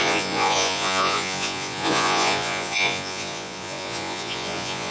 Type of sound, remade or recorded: remade